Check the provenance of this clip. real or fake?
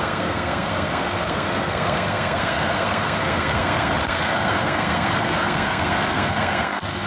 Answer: fake